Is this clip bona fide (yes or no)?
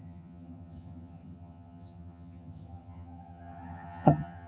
no